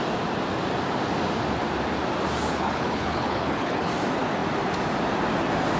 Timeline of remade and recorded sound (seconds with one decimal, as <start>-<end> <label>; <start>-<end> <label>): 0.0-2.5 recorded; 2.5-3.9 remade; 3.9-5.8 recorded